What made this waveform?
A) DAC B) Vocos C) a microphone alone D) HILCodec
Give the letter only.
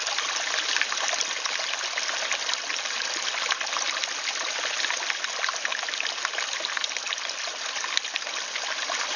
C